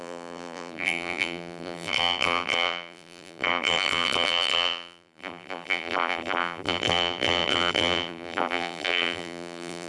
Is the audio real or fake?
fake